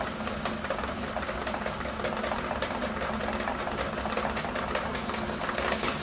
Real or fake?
real